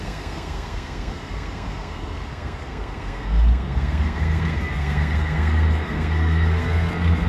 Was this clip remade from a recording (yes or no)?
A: yes